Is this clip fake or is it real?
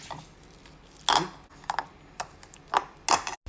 real